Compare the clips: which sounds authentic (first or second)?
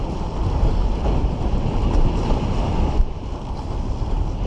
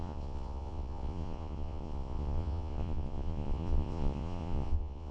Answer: first